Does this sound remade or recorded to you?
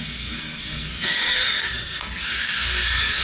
remade